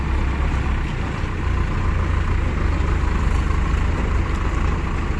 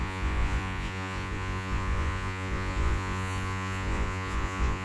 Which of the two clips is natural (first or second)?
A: first